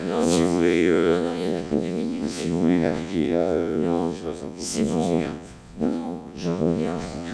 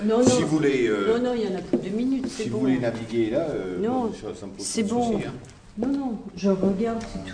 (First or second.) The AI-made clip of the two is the first